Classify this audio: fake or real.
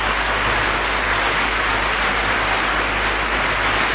real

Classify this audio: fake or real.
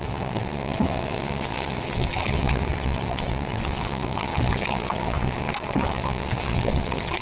fake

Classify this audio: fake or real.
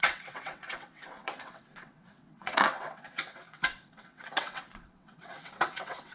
fake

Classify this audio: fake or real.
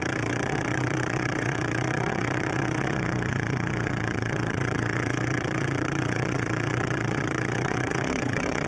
fake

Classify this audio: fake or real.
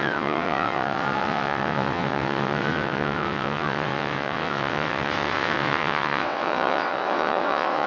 fake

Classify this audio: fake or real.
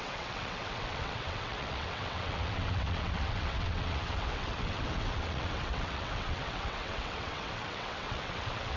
fake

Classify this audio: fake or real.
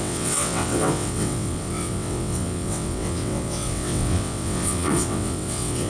fake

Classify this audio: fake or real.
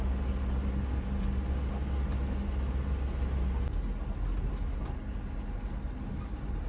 real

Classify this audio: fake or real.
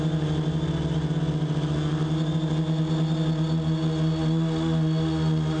real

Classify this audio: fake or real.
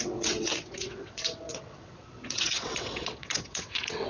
fake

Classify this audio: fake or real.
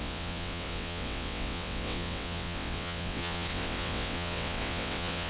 fake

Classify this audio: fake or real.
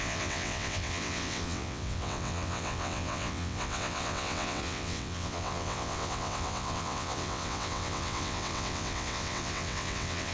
fake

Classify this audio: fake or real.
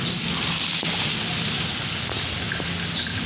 real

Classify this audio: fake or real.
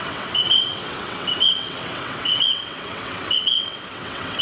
fake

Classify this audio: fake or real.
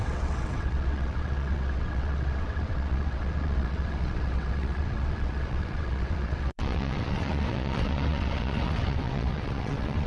fake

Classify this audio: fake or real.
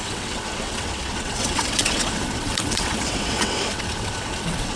fake